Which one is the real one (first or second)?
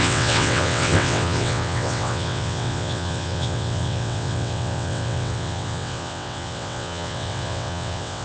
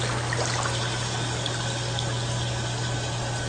second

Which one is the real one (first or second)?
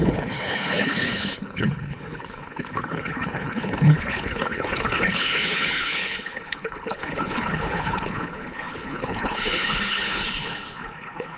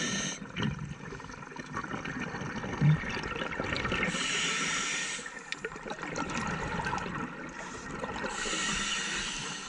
second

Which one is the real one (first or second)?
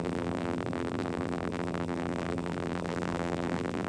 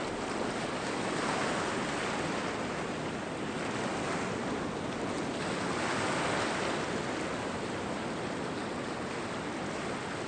second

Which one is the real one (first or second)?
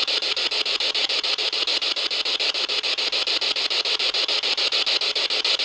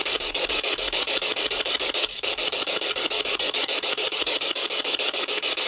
first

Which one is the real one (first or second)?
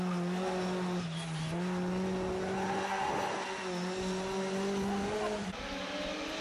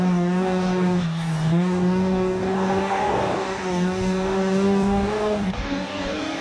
first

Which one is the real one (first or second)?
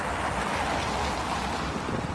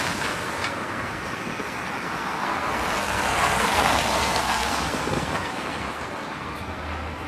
first